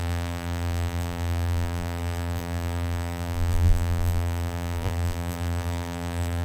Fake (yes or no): yes